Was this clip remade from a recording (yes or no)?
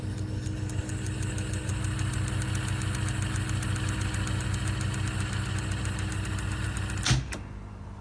no